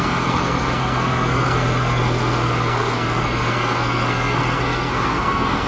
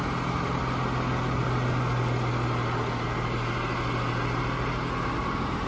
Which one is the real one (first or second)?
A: second